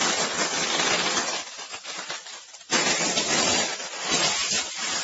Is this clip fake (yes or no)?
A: yes